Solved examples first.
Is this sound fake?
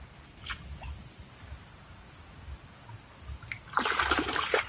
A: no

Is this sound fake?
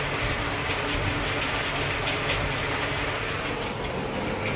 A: no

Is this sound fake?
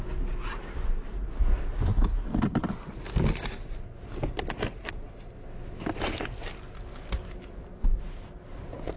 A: no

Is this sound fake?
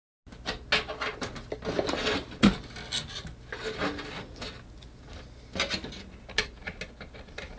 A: no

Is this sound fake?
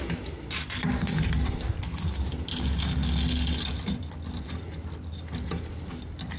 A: no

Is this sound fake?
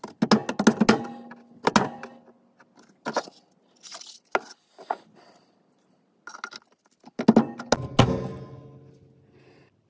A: no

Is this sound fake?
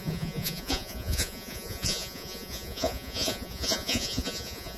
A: yes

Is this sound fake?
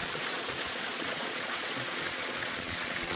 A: yes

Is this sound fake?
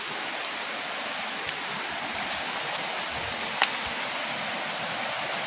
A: no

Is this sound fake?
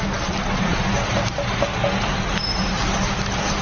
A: no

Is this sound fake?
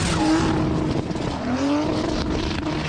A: no